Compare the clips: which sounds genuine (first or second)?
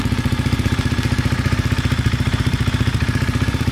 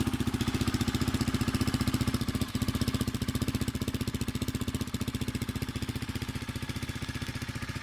second